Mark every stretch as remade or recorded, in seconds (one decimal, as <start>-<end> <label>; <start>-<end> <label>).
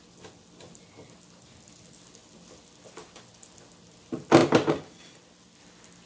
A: 0.0-6.1 recorded